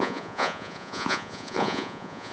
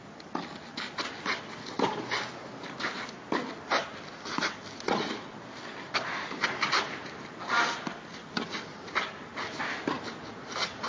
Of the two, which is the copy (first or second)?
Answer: first